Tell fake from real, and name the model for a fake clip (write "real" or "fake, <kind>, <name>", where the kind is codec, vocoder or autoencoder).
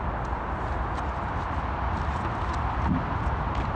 real